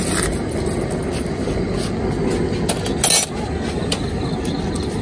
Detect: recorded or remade recorded